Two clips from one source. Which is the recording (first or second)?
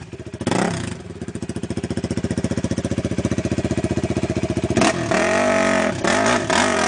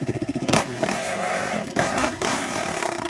first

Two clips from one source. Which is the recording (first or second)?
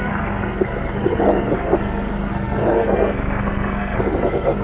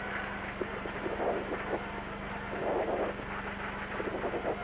second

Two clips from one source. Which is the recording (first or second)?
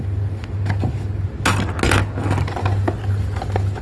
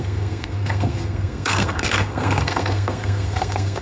first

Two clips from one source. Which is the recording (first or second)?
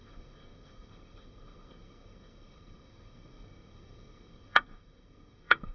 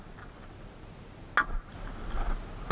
second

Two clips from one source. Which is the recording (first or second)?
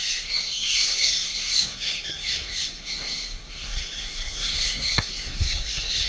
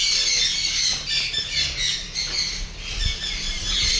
second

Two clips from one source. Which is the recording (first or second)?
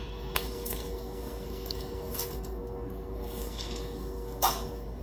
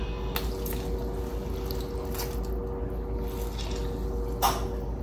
second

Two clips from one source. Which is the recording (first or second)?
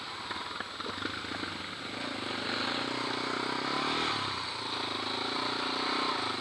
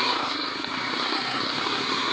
first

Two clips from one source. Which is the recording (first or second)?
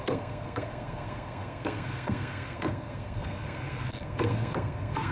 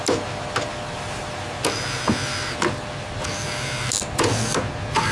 second